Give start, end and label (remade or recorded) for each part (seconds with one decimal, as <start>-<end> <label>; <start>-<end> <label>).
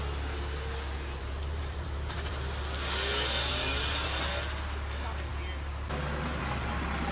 0.0-1.2 recorded; 1.2-2.3 remade; 2.3-3.5 recorded; 3.5-4.3 remade; 4.3-7.1 recorded